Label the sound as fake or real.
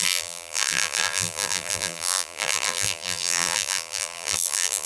fake